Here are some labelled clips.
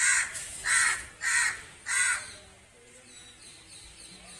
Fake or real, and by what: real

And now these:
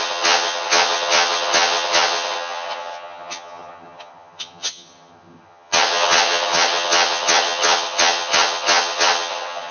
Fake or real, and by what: fake, vocoder, HiFi-GAN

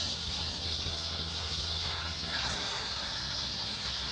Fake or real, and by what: fake, codec, SNAC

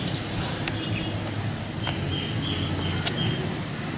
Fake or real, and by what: real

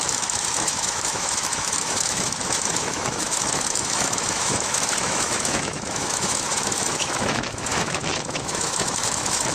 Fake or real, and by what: fake, autoencoder, DAC-VAE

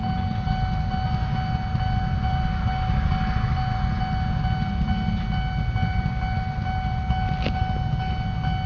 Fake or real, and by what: real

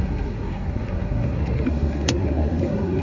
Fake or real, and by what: fake, codec, SNAC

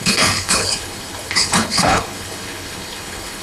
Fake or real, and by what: fake, codec, HILCodec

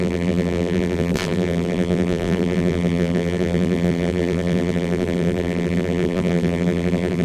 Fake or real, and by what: fake, vocoder, BigVGAN v2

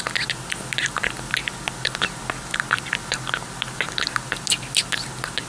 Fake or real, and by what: fake, vocoder, BigVGAN v2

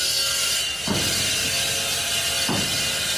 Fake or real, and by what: real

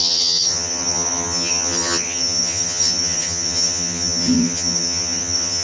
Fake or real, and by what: fake, vocoder, HiFi-GAN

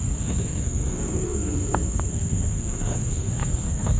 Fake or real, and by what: fake, codec, SNAC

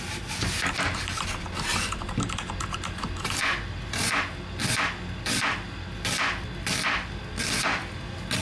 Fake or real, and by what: real